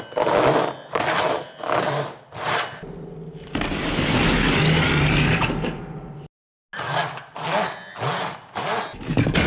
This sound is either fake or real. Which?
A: real